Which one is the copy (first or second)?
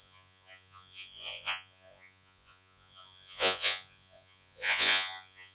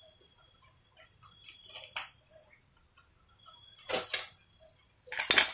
first